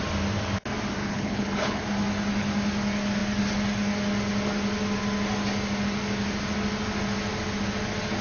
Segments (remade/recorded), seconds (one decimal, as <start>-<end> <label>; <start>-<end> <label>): 0.0-1.0 recorded; 1.0-1.8 remade; 1.8-8.2 recorded